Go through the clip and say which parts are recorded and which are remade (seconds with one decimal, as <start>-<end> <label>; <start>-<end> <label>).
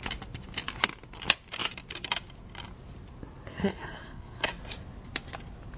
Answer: 0.0-3.6 recorded; 3.6-4.5 remade; 4.5-5.8 recorded